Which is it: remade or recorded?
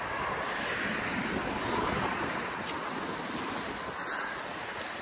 recorded